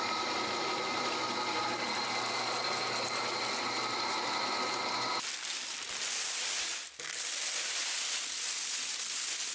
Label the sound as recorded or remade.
recorded